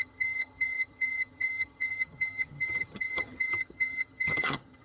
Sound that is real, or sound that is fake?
fake